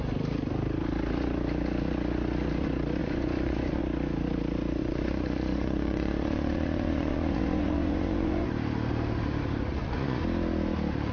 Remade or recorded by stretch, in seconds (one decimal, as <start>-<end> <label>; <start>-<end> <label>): 0.0-3.0 recorded; 3.0-3.8 remade; 3.8-4.8 recorded; 4.8-8.5 remade; 8.5-9.7 recorded; 9.7-10.2 remade; 10.2-11.1 recorded